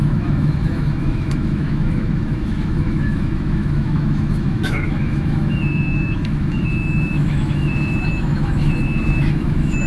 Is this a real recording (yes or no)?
no